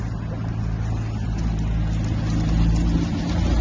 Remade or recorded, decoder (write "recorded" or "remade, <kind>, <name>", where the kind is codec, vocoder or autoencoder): recorded